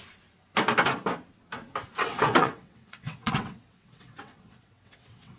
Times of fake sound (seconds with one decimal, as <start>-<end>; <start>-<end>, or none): 2.0-5.4